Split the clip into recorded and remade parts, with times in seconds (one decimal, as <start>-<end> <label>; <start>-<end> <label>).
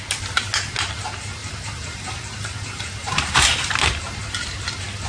0.0-1.4 recorded; 1.4-4.0 remade; 4.0-5.1 recorded